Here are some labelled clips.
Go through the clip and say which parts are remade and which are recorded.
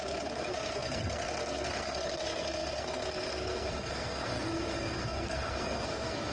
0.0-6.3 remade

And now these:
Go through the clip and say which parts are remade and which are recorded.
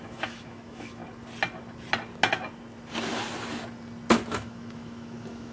0.0-1.0 remade; 1.0-4.3 recorded; 4.3-5.5 remade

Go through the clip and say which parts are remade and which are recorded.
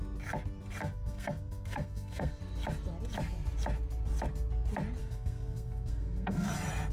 0.0-0.8 recorded; 0.8-2.4 remade; 2.4-5.0 recorded; 5.0-6.5 remade; 6.5-6.9 recorded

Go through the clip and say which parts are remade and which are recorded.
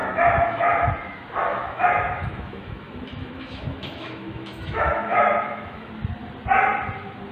0.0-0.9 remade; 0.9-1.5 recorded; 1.5-5.9 remade; 5.9-7.3 recorded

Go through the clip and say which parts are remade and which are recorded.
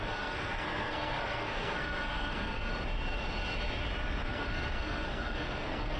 0.0-2.7 remade; 2.7-4.2 recorded; 4.2-6.0 remade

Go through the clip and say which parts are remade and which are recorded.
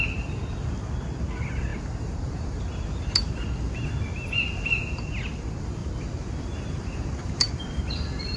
0.0-1.7 recorded; 1.7-3.3 remade; 3.3-5.8 recorded; 5.8-7.5 remade; 7.5-8.4 recorded